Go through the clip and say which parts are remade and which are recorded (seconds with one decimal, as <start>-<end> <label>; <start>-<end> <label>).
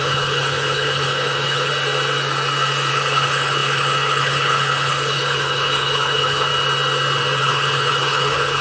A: 0.0-1.7 remade; 1.7-2.9 recorded; 2.9-6.5 remade; 6.5-7.4 recorded; 7.4-8.6 remade